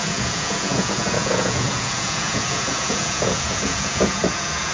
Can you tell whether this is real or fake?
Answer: fake